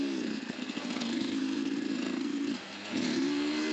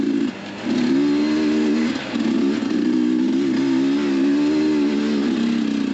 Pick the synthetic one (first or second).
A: first